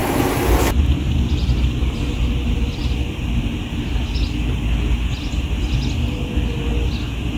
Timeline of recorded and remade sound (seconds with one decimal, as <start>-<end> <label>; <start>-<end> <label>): 0.0-7.4 recorded